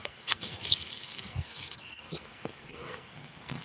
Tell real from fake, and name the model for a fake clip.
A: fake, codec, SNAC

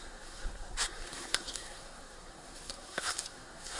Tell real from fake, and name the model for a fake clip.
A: fake, codec, SNAC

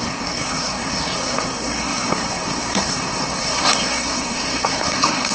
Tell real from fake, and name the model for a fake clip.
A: fake, codec, SNAC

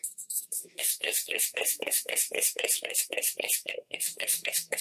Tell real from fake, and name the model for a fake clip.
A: fake, codec, SNAC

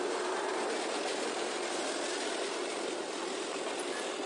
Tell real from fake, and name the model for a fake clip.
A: real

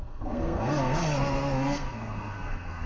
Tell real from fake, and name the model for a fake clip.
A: fake, codec, SNAC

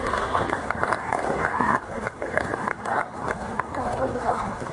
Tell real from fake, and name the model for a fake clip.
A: fake, codec, SNAC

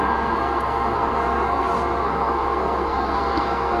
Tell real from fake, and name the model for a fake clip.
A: fake, codec, SNAC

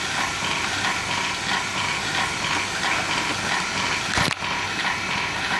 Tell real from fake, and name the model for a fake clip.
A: real